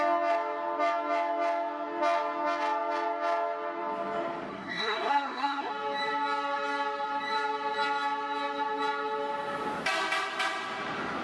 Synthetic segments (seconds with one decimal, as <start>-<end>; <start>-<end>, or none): 4.5-5.7